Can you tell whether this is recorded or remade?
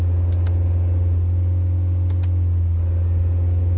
recorded